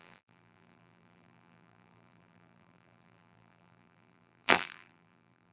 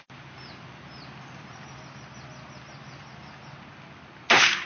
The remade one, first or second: first